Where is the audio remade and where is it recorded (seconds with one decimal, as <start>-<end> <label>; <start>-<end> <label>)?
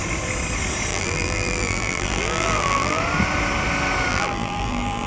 0.0-0.9 recorded; 0.9-3.0 remade; 3.0-4.1 recorded; 4.1-5.1 remade